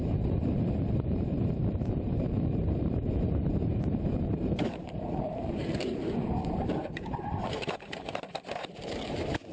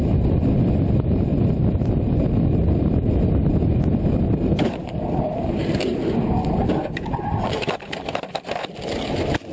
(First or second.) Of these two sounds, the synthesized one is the first